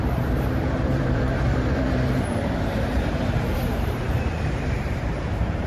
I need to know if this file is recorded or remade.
remade